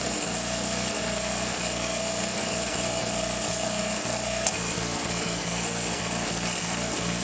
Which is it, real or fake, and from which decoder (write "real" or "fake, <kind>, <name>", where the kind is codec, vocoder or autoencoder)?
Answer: fake, codec, SNAC